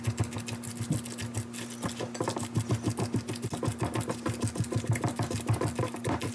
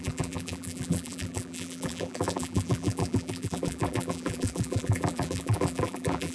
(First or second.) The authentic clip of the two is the first